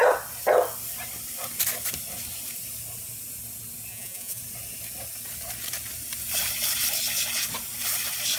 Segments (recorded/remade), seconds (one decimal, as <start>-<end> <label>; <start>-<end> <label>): 0.0-3.9 recorded; 3.9-4.4 remade; 4.4-8.4 recorded

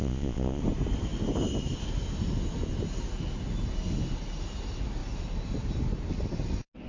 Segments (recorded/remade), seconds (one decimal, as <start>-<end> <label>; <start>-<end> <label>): 0.0-0.6 remade; 0.6-6.9 recorded

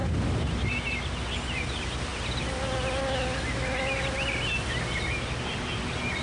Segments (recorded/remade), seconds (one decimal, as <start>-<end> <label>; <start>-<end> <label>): 0.0-6.2 recorded